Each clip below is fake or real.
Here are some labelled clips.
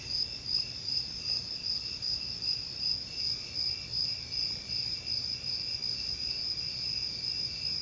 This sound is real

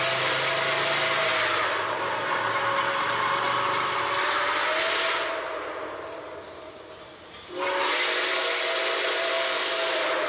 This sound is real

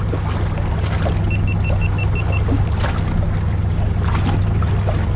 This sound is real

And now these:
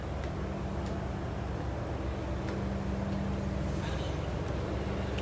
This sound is real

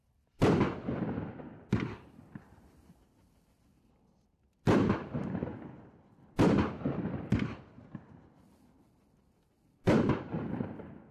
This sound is real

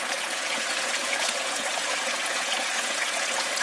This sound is fake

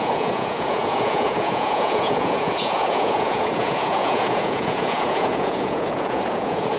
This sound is fake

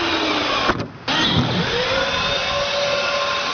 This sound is real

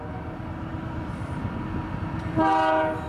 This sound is real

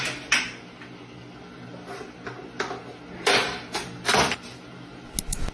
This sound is real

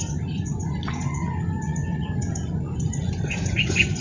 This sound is fake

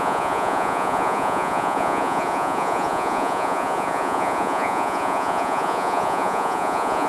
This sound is fake